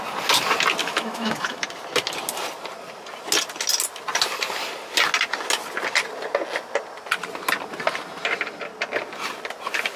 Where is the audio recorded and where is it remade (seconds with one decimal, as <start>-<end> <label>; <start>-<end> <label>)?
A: 0.0-0.8 recorded; 0.8-1.6 remade; 1.6-10.0 recorded